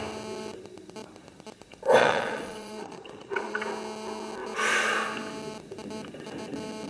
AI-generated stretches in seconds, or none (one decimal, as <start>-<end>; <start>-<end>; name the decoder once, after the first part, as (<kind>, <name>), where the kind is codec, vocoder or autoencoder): 2.0-3.6 (vocoder, Vocos)